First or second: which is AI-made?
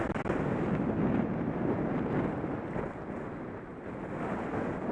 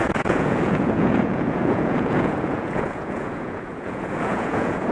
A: second